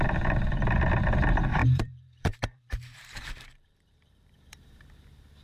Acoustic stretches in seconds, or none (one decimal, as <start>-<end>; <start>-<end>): 0.0-1.6; 4.8-5.4